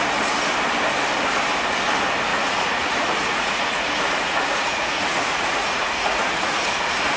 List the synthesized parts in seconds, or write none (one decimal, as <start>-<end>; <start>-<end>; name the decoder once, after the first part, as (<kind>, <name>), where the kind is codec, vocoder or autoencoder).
2.3-6.6 (vocoder, Vocos)